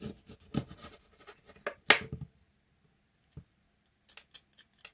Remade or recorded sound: recorded